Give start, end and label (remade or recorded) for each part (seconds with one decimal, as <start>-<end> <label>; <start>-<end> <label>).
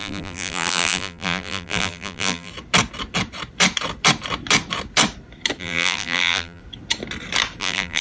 0.0-2.5 remade; 2.5-5.6 recorded; 5.6-6.6 remade; 6.6-7.6 recorded; 7.6-8.0 remade